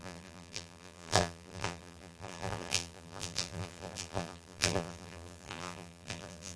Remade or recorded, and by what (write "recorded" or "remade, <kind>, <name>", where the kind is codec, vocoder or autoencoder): remade, vocoder, BigVGAN v2